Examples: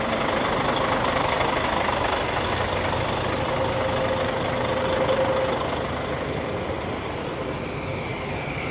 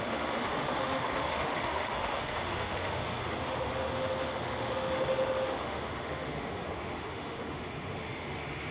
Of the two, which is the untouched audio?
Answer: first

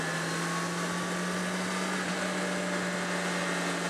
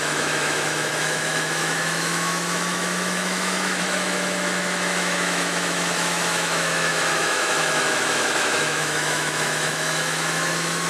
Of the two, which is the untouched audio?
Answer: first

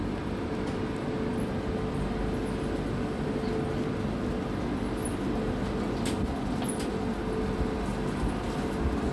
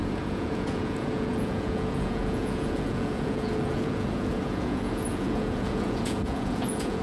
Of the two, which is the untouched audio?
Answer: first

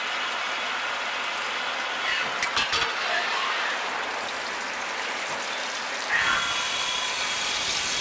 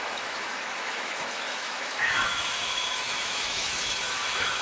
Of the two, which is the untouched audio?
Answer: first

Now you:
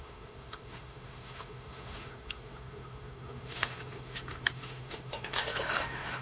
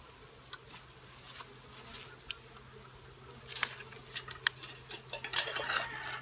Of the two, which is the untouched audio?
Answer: second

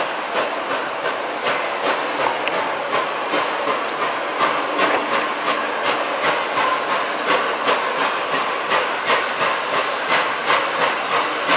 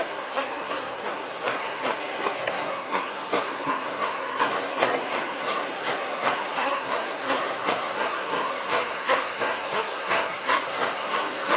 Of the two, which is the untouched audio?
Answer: first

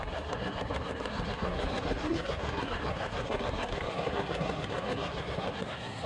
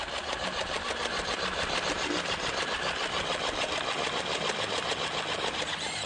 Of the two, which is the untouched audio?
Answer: second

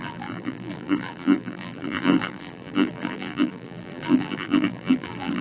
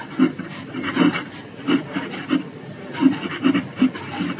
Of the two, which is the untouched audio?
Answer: second